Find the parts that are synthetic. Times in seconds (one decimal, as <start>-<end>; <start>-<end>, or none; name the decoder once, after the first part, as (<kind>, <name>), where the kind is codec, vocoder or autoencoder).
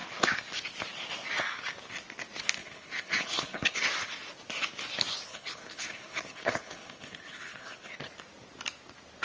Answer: 2.6-3.8 (codec, HILCodec); 5.3-8.0